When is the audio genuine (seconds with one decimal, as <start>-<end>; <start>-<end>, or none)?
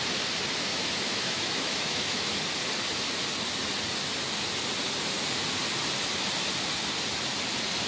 0.0-0.7; 2.2-7.9